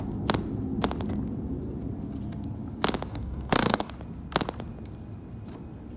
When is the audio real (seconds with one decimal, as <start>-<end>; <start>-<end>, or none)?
0.0-3.1; 3.9-6.0